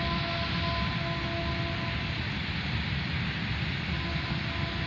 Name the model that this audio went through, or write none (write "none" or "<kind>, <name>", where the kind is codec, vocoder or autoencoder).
none